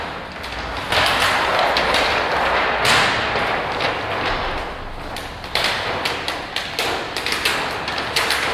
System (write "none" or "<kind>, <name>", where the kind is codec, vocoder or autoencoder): none